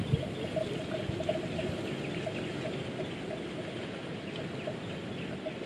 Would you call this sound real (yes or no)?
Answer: yes